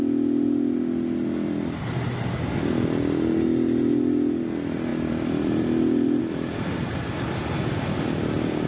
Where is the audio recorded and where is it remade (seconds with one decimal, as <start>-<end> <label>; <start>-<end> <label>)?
0.0-4.9 recorded; 4.9-6.2 remade; 6.2-8.7 recorded